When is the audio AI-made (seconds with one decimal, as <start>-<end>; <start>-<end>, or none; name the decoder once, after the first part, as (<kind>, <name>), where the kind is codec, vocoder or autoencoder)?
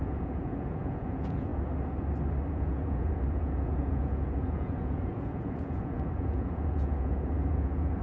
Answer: 0.0-1.5 (vocoder, Vocos); 2.5-8.0